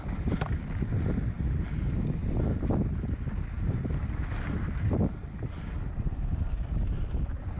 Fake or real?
real